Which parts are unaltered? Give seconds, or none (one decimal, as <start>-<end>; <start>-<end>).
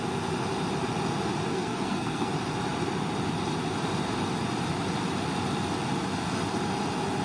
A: 0.0-1.5; 2.3-7.2